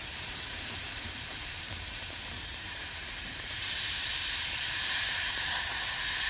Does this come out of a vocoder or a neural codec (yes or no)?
yes